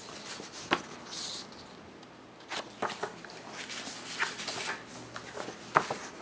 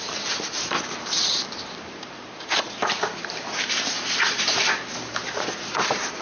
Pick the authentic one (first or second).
first